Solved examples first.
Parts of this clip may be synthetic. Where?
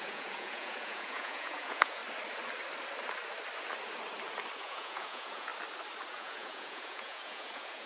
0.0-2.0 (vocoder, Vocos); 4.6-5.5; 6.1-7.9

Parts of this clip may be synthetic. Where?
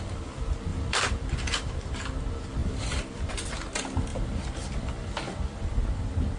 0.7-1.7 (vocoder, BigVGAN v2); 2.6-3.3; 4.1-5.7